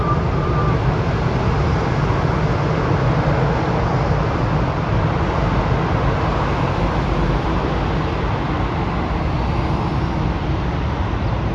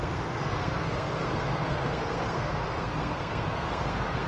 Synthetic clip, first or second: second